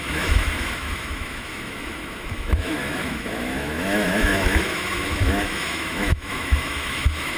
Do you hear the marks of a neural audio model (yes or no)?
yes